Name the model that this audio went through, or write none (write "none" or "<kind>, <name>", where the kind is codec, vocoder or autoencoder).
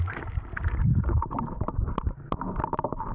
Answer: none